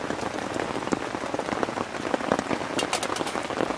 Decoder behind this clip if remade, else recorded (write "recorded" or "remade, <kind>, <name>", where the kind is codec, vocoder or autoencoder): recorded